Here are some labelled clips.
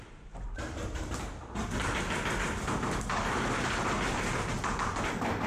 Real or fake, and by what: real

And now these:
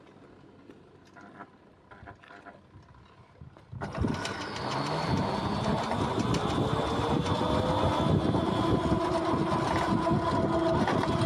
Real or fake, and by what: real